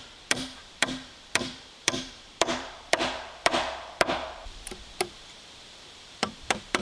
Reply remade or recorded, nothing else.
remade